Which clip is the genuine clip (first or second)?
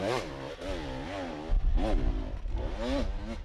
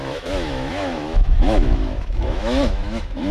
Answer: first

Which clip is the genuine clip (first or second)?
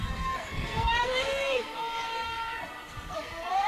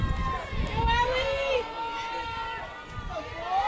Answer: second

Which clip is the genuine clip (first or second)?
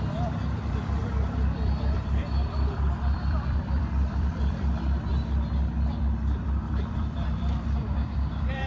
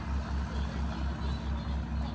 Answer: second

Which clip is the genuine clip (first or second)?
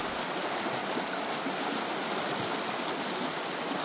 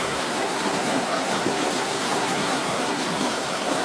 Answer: first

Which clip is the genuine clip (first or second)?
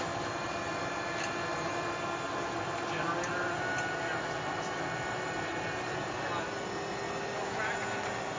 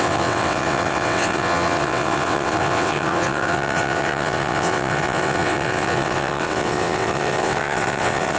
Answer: first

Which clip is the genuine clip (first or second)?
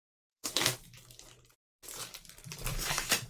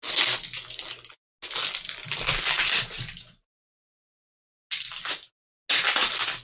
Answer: second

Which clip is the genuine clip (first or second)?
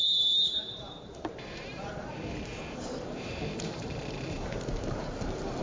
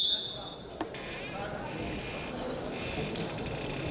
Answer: second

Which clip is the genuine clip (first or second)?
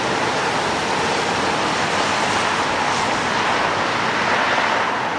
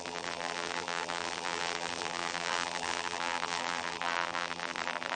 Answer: first